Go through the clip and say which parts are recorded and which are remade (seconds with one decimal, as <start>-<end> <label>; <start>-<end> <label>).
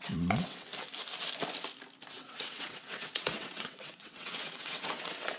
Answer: 0.0-0.7 remade; 0.7-2.1 recorded; 2.1-5.4 remade